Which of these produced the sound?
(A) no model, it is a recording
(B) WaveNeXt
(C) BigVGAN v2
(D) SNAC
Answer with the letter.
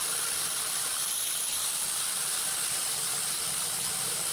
A